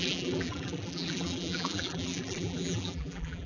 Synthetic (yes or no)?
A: yes